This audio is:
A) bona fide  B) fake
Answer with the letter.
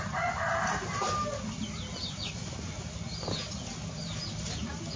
A